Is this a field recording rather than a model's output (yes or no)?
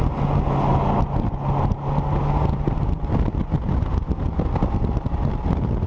yes